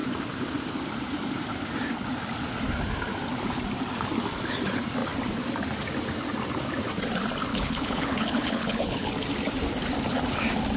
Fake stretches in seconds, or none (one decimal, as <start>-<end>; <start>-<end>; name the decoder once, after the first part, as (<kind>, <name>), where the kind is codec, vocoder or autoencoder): 7.5-9.1 (codec, HILCodec)